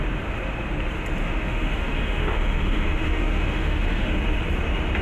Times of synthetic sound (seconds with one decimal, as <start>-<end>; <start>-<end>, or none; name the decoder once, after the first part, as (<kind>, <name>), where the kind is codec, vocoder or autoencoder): 1.2-4.2 (autoencoder, DAC-VAE)